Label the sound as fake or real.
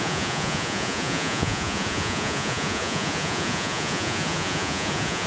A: fake